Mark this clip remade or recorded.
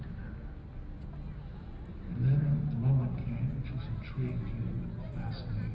recorded